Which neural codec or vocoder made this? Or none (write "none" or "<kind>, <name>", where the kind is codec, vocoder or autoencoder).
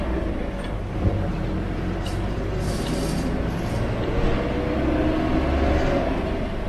none